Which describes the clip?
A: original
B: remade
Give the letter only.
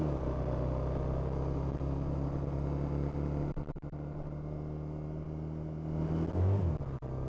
A